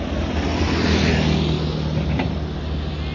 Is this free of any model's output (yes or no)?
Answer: yes